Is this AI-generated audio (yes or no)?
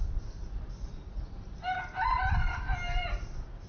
no